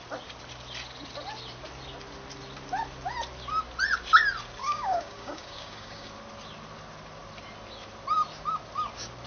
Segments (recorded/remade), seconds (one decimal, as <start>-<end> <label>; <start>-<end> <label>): 0.0-4.6 recorded; 4.6-6.1 remade; 6.1-9.3 recorded